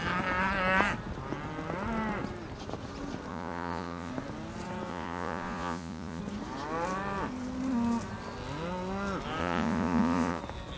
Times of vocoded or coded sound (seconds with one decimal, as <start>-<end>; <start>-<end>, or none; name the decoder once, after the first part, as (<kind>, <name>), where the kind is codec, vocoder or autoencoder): 3.3-4.1 (vocoder, Vocos); 4.9-6.2; 9.4-10.4